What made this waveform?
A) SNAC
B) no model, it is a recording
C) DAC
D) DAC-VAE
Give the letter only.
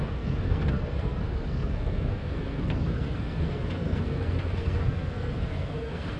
A